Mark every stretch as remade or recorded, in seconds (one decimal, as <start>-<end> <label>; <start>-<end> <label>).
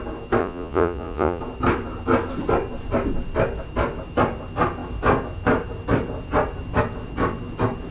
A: 0.0-0.4 recorded; 0.4-1.4 remade; 1.4-7.9 recorded